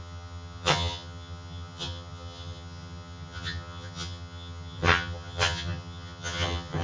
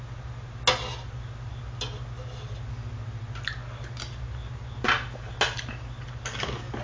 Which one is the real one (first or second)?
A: second